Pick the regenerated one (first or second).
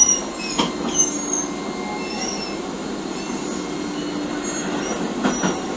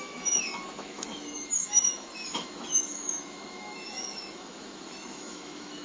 second